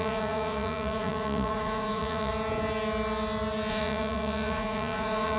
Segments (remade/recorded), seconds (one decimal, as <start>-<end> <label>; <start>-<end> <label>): 0.0-2.3 remade; 2.3-3.7 recorded; 3.7-5.4 remade